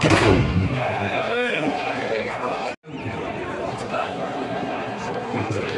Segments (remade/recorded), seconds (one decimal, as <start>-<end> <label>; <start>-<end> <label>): 0.0-2.7 remade; 2.7-3.7 recorded; 3.7-5.8 remade